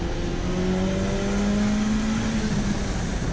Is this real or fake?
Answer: real